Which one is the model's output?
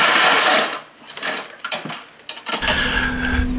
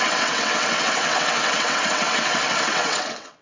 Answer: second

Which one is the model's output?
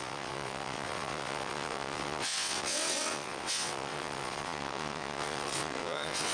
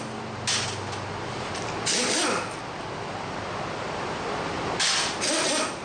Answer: first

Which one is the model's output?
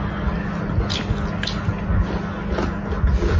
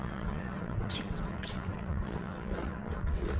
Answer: second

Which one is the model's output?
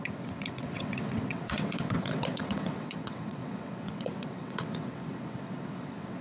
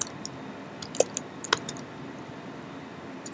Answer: first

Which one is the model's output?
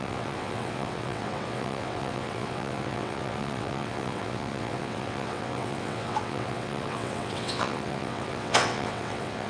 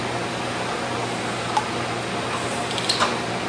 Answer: first